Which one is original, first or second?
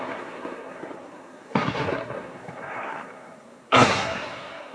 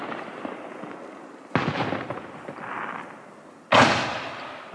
second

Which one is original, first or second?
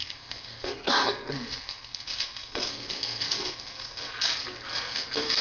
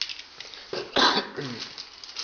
second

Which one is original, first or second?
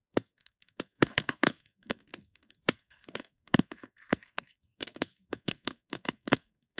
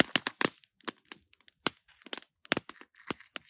second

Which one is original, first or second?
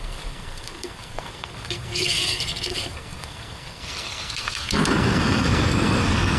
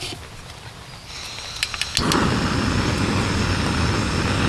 second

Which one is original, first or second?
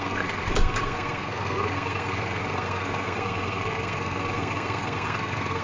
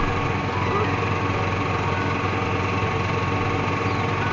second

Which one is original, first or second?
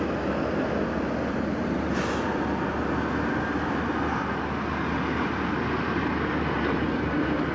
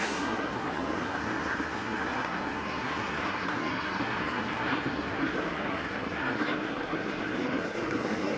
first